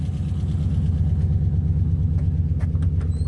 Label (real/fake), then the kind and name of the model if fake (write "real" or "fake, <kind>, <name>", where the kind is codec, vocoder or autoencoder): real